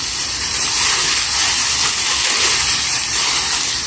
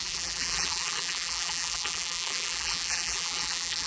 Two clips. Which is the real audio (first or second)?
first